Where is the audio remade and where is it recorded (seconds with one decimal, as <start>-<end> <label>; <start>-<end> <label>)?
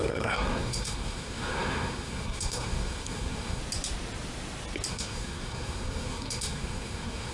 0.0-3.6 remade; 3.6-4.9 recorded; 4.9-7.3 remade